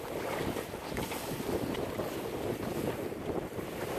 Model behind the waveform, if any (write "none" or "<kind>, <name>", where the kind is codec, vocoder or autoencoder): none